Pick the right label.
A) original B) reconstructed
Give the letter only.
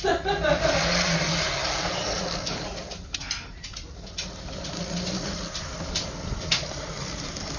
A